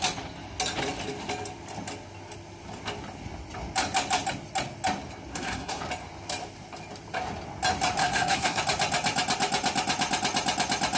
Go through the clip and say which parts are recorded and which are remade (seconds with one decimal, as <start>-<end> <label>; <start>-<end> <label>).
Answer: 0.0-5.3 recorded; 5.3-5.8 remade; 5.8-8.0 recorded; 8.0-8.6 remade; 8.6-11.0 recorded